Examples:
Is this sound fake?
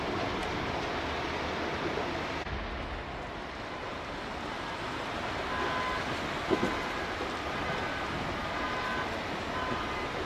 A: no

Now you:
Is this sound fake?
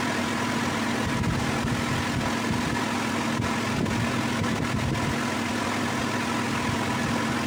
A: no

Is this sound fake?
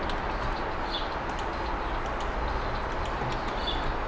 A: no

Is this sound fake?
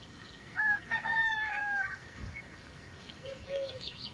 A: yes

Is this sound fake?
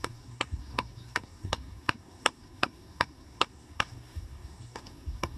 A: yes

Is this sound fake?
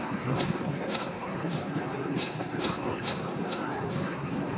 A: yes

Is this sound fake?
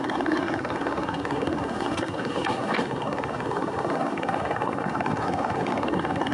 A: yes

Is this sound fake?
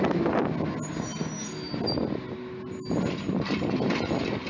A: no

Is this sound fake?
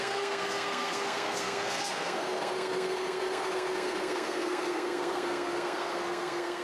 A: yes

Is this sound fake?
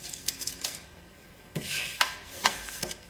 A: yes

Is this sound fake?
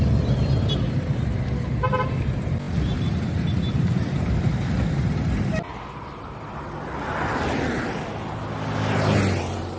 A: no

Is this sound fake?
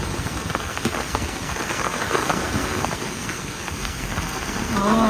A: yes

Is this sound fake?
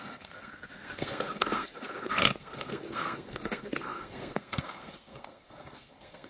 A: yes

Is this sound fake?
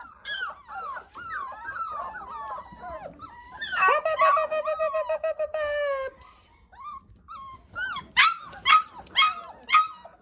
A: no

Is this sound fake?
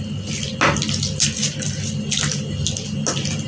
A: no